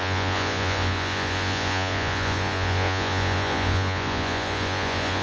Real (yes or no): no